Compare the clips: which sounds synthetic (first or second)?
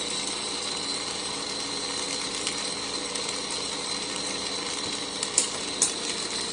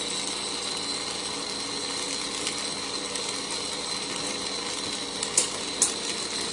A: first